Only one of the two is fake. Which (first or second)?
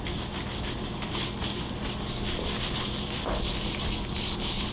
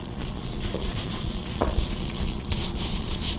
second